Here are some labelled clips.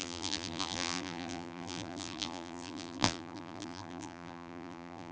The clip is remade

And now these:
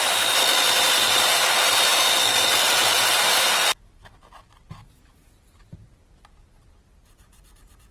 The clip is recorded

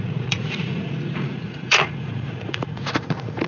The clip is remade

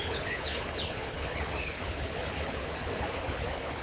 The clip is remade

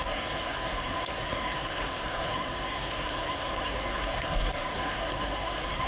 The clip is remade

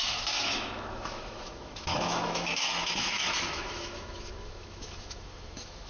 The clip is remade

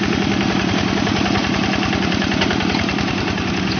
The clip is remade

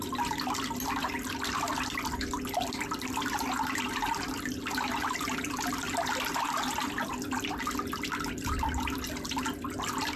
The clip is recorded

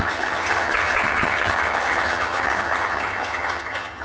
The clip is remade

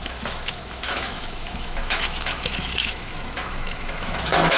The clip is remade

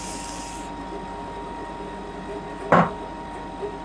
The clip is recorded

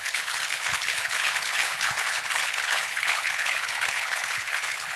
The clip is remade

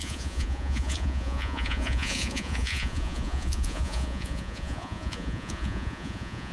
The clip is remade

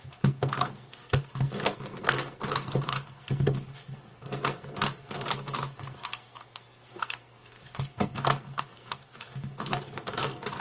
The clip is remade